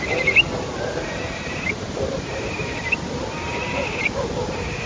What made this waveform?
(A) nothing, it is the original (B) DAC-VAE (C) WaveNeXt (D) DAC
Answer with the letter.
A